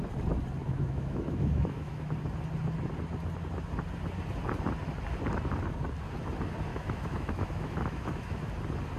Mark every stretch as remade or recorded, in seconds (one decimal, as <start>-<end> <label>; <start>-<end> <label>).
0.0-0.6 recorded; 0.6-2.1 remade; 2.1-6.7 recorded; 6.7-8.5 remade; 8.5-9.0 recorded